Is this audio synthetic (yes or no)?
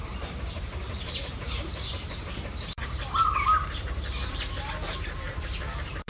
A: yes